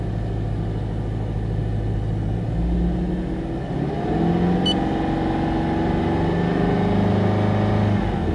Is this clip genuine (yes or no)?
yes